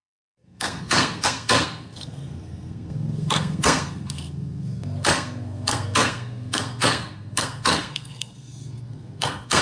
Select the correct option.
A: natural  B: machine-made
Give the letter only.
B